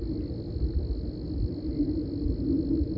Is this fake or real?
real